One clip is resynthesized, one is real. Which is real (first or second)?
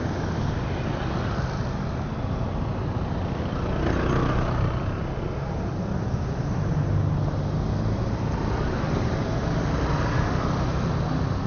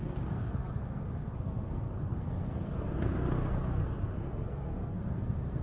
first